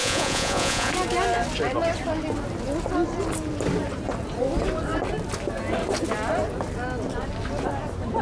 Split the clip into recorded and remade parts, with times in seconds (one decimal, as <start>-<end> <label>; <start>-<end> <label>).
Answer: 0.0-0.9 remade; 0.9-8.2 recorded